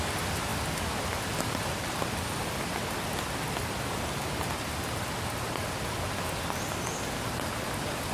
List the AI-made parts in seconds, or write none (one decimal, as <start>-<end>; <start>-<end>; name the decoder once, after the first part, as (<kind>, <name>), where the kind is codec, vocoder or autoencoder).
none